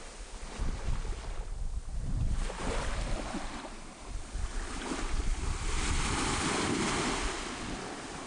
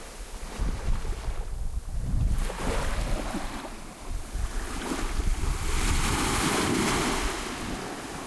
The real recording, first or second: second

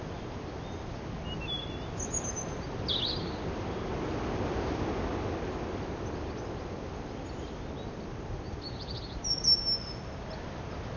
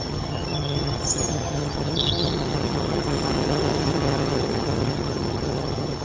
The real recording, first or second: first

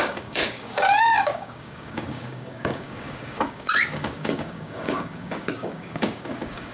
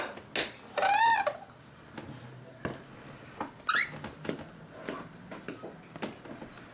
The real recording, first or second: second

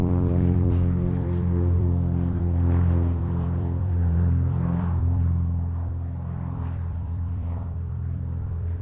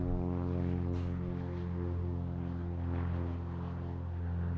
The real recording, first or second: second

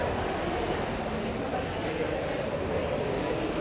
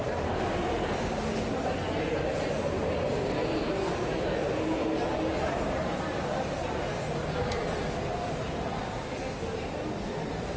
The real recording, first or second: second